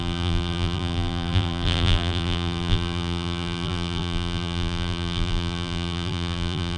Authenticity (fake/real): fake